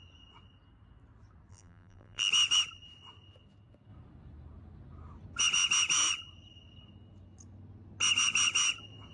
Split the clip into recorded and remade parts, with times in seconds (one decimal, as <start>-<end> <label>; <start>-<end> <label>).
0.0-1.5 recorded; 1.5-2.3 remade; 2.3-9.1 recorded